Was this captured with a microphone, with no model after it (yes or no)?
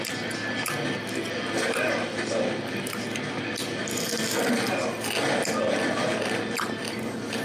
yes